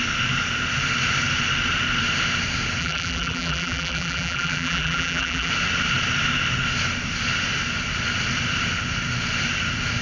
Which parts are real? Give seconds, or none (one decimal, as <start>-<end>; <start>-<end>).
0.0-2.8; 5.5-10.0